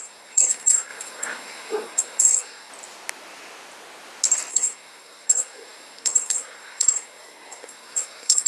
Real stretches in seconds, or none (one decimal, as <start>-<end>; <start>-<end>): 2.7-4.5